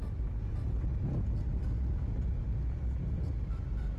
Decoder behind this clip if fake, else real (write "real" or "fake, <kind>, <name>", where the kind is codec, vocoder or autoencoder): real